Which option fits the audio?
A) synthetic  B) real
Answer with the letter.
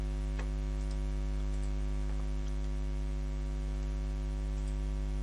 B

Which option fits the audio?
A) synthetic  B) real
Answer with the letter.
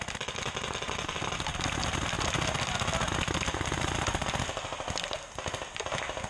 B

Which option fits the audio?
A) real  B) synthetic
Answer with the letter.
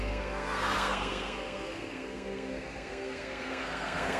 B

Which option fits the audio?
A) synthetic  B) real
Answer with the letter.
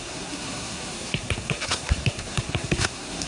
A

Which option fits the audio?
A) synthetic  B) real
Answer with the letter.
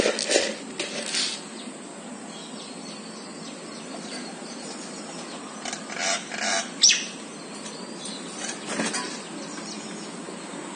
B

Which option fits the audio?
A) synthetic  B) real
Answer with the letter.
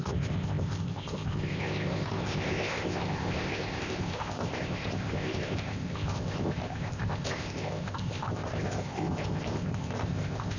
A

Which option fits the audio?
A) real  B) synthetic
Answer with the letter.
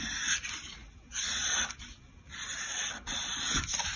A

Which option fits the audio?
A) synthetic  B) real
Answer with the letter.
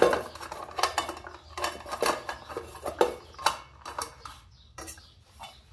B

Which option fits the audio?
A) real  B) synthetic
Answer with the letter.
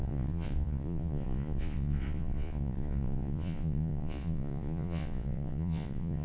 B